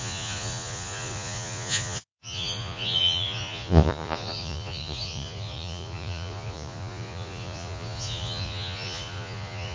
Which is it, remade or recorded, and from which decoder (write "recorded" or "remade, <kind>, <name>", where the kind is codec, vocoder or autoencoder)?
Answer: remade, vocoder, Vocos